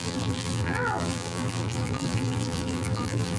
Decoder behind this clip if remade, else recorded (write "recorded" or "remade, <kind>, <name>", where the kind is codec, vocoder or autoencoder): remade, vocoder, BigVGAN v2